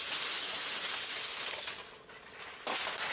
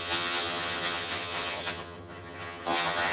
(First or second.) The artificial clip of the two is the second